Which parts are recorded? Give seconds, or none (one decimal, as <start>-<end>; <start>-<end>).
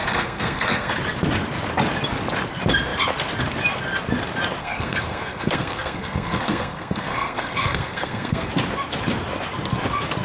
0.9-4.6; 8.5-10.2